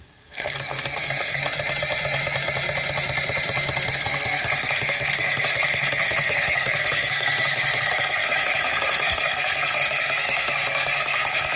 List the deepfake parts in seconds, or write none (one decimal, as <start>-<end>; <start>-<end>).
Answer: 0.0-1.4; 3.9-11.6